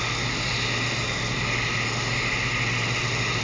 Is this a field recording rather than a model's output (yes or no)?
yes